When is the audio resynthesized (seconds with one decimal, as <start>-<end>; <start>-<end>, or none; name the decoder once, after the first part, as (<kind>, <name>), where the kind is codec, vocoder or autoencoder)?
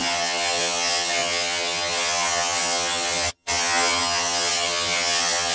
0.0-5.5 (vocoder, HiFi-GAN)